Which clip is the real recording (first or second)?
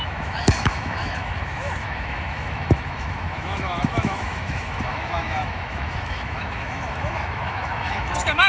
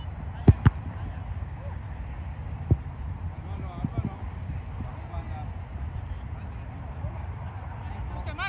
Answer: second